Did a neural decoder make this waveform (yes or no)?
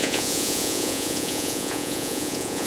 yes